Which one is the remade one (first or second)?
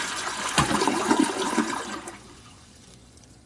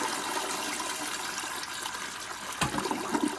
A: first